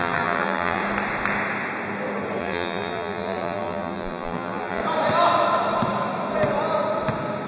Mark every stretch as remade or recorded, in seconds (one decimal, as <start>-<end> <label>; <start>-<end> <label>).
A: 0.0-0.8 remade; 0.8-2.4 recorded; 2.4-4.8 remade; 4.8-7.5 recorded